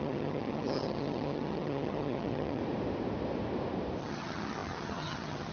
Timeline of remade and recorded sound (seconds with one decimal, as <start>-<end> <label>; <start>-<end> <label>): 0.0-2.6 remade; 2.6-4.0 recorded; 4.0-5.5 remade